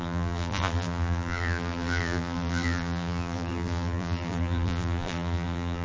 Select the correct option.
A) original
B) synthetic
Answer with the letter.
B